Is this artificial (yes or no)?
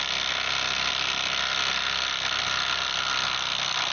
no